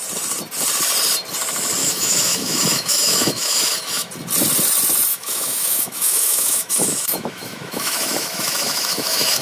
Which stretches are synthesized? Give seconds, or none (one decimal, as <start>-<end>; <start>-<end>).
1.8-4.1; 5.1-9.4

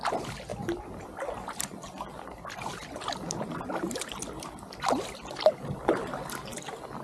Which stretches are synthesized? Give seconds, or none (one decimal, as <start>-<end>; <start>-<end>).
0.5-4.7

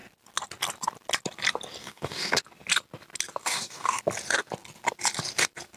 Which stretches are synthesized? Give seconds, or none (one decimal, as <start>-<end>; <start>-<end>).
1.8-2.4; 3.4-4.0